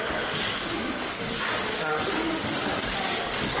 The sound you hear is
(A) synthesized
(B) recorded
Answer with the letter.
A